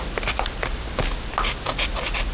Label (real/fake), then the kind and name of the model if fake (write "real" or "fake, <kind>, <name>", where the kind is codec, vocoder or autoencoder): real